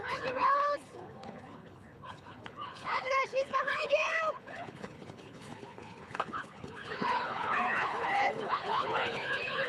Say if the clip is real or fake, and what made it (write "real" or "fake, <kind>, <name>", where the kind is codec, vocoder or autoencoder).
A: fake, codec, HILCodec